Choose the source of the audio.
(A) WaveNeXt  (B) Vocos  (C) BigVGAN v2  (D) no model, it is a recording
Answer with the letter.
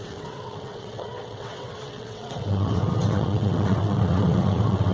A